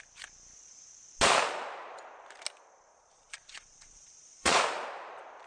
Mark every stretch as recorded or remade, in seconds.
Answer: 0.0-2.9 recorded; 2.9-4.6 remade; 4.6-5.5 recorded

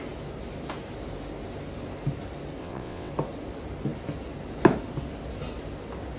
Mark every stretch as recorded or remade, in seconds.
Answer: 0.0-2.6 recorded; 2.6-3.1 remade; 3.1-6.2 recorded

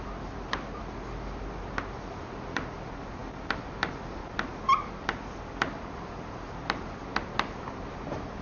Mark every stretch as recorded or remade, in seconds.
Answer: 0.0-8.4 recorded

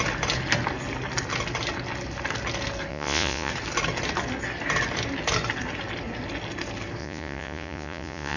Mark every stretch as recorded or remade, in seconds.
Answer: 0.0-2.9 recorded; 2.9-3.5 remade; 3.5-7.0 recorded; 7.0-8.4 remade

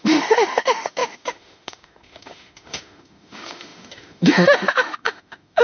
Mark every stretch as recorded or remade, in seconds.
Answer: 0.0-5.6 remade